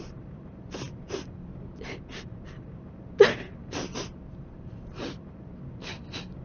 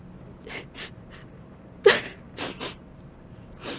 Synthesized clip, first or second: first